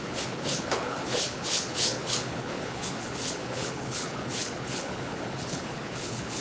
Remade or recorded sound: remade